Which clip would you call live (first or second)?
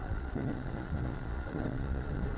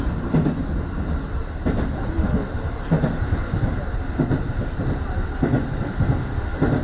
second